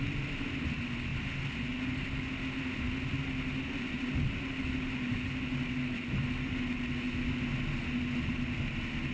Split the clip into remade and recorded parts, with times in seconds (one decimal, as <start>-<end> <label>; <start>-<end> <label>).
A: 0.0-9.1 recorded